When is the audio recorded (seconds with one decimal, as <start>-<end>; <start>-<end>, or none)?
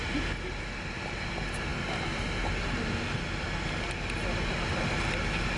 0.0-5.6